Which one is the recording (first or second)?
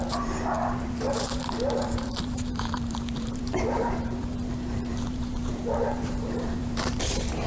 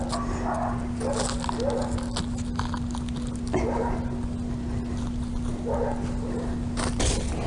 second